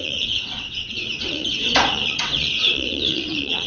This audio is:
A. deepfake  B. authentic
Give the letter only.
A